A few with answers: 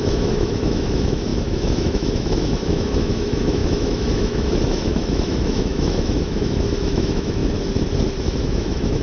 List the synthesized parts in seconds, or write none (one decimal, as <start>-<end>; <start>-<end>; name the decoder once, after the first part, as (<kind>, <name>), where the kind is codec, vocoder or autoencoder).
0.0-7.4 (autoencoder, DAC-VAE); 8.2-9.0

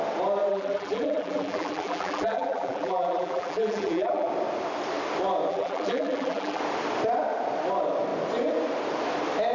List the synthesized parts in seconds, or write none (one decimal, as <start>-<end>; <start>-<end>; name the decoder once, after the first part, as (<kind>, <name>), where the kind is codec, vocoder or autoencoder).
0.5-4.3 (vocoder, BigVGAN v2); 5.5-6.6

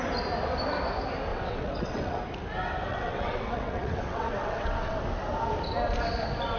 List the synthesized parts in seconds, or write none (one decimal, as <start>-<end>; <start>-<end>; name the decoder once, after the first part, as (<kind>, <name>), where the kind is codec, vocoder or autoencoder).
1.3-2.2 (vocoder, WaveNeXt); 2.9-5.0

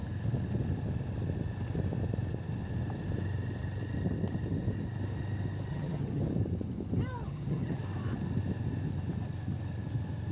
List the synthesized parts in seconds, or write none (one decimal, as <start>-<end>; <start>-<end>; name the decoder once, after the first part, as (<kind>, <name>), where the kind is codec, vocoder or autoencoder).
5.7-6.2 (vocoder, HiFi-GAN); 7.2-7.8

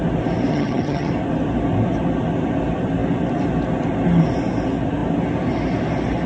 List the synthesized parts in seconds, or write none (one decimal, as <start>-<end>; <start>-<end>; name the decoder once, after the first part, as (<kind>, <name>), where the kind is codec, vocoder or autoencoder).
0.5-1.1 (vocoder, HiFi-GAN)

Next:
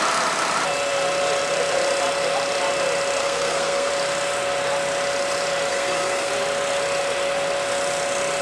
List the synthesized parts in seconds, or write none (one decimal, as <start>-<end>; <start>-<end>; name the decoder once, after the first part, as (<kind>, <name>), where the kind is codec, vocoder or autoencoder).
3.2-3.9 (codec, SNAC); 5.7-6.3